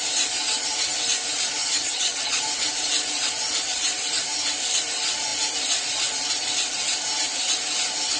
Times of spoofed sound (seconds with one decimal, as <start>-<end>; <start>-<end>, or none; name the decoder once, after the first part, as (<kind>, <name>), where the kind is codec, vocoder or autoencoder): 1.6-2.4 (vocoder, HiFi-GAN)